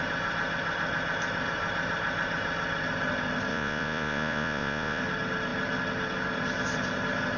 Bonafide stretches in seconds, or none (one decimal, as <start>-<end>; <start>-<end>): 0.0-3.5; 5.0-7.4